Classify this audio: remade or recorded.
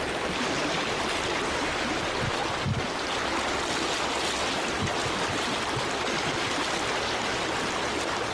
recorded